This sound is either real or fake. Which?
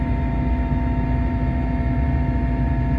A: real